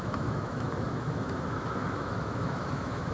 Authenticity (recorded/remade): remade